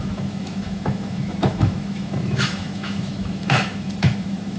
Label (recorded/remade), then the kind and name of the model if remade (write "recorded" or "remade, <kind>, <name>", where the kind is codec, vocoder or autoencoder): remade, autoencoder, DAC-VAE